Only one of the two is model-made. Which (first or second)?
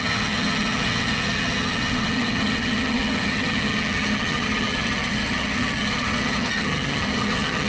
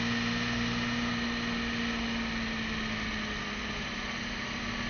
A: first